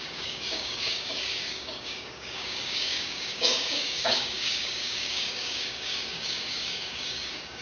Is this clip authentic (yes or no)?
no